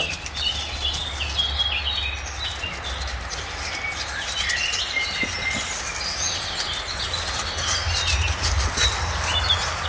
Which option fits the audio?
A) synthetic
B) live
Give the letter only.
B